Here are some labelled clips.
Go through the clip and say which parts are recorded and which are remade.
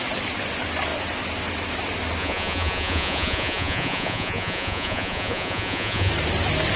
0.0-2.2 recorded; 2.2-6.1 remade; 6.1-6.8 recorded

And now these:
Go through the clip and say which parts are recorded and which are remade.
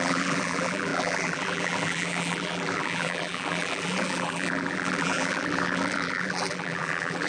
0.0-7.3 remade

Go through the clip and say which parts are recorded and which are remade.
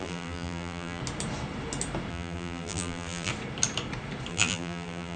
0.0-1.0 remade; 1.0-2.1 recorded; 2.1-3.3 remade; 3.3-4.3 recorded; 4.3-5.2 remade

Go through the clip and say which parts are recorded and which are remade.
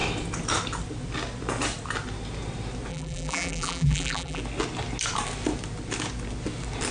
0.0-2.9 recorded; 2.9-4.4 remade; 4.4-6.9 recorded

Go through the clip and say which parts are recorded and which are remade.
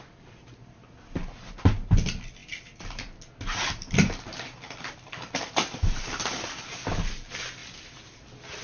0.0-7.6 recorded; 7.6-8.2 remade; 8.2-8.6 recorded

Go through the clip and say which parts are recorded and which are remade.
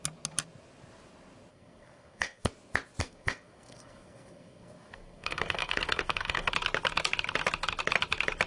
0.0-1.5 recorded; 1.5-2.5 remade; 2.5-3.0 recorded; 3.0-6.5 remade; 6.5-8.5 recorded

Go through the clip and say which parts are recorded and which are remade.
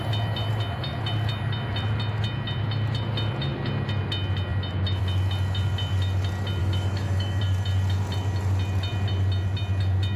0.0-6.6 recorded; 6.6-7.4 remade; 7.4-10.2 recorded